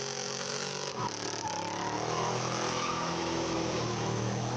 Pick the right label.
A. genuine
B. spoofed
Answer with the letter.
B